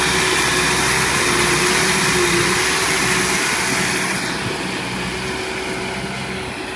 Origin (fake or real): real